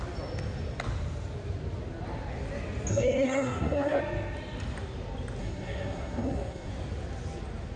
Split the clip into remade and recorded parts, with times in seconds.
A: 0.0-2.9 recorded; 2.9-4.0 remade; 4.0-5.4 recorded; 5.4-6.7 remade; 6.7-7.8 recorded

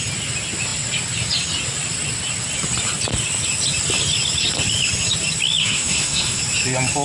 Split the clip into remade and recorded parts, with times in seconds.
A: 0.0-5.6 recorded; 5.6-6.4 remade; 6.4-7.0 recorded

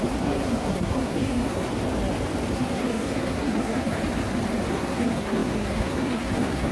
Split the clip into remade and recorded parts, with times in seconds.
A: 0.0-1.7 remade; 1.7-2.5 recorded; 2.5-4.0 remade; 4.0-4.7 recorded; 4.7-6.7 remade